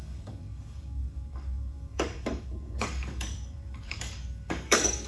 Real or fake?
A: fake